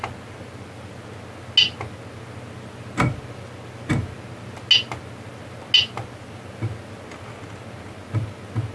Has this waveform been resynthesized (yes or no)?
no